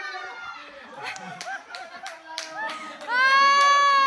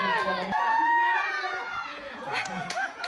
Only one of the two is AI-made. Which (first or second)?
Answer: second